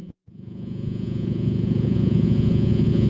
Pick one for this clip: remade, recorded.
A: remade